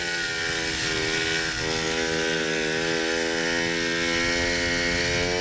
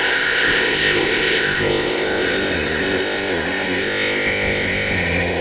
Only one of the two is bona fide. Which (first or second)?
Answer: first